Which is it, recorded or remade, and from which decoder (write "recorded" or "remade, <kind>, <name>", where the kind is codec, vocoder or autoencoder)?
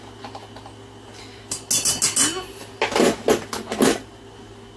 recorded